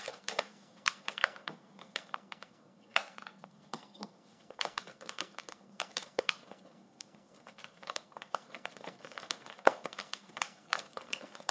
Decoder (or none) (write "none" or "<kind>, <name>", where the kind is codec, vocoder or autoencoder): codec, SNAC